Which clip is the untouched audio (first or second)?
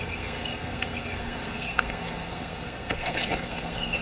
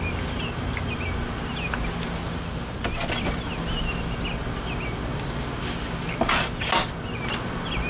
second